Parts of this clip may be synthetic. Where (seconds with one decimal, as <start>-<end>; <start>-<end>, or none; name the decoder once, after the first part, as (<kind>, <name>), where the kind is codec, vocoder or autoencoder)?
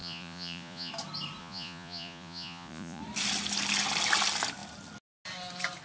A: 0.0-0.9 (vocoder, Vocos); 1.4-3.0